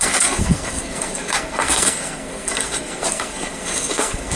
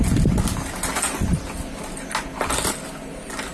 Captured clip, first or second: second